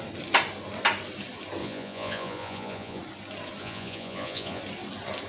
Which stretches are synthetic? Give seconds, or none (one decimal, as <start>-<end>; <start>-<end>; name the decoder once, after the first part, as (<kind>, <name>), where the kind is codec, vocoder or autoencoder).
1.6-3.0 (vocoder, Vocos); 3.6-4.6